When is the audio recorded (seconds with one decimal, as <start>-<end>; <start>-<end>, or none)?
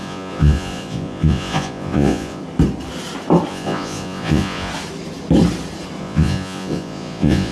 2.4-3.5; 4.7-6.0